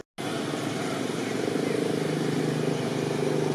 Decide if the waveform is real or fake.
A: real